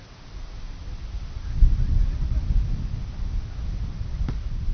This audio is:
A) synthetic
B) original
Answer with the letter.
B